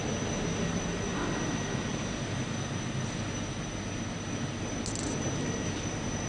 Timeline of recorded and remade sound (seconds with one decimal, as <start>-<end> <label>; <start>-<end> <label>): 0.0-6.3 recorded